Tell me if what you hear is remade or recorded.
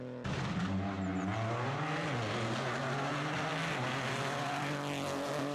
recorded